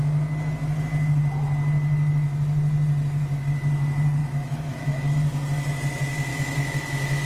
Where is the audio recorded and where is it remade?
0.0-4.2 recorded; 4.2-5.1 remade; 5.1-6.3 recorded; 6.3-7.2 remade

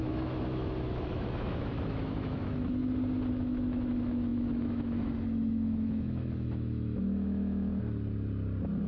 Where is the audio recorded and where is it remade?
0.0-2.8 remade; 2.8-3.3 recorded; 3.3-7.7 remade; 7.7-8.9 recorded

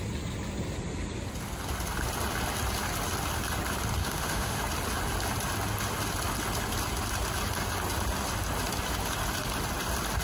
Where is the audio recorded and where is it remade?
0.0-4.0 recorded; 4.0-4.6 remade; 4.6-10.2 recorded

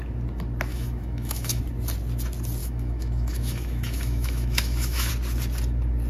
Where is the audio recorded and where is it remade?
0.0-0.7 recorded; 0.7-1.6 remade; 1.6-2.6 recorded; 2.6-5.1 remade; 5.1-6.1 recorded